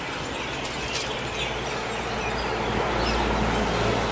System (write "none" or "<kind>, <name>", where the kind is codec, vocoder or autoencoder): none